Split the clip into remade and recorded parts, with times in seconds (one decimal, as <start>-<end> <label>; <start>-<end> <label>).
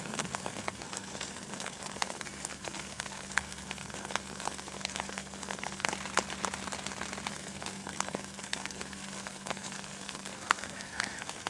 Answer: 0.0-5.9 remade; 5.9-7.3 recorded; 7.3-11.5 remade